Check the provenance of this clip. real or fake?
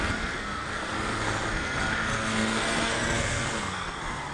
fake